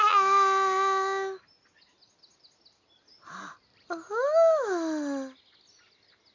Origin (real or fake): real